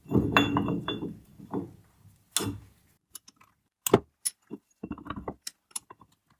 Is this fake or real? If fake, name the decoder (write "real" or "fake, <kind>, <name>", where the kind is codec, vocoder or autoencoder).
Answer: real